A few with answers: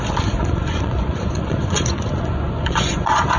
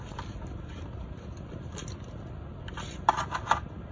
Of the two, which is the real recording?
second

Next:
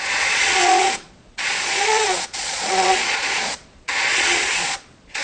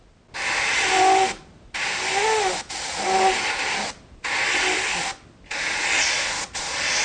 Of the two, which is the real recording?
second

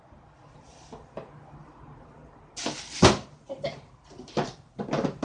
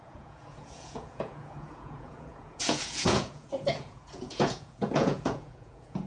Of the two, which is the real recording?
first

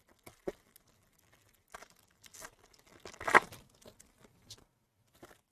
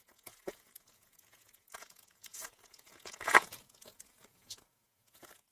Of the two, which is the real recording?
first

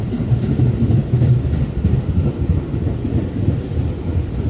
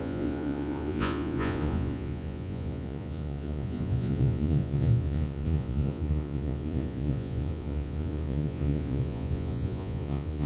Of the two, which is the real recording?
first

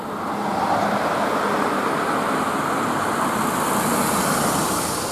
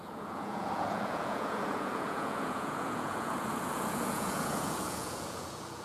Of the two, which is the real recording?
first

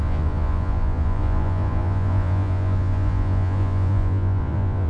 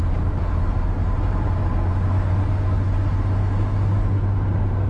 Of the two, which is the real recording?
second